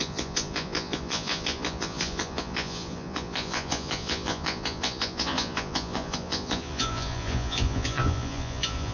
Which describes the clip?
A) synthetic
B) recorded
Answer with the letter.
A